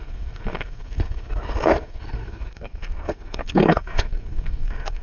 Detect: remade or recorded remade